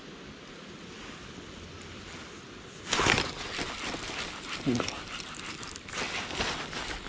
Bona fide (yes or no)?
yes